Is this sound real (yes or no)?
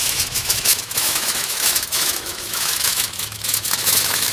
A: no